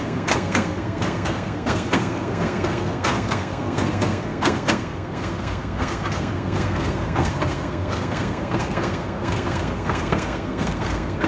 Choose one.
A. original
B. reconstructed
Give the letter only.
B